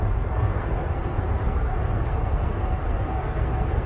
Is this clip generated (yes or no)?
yes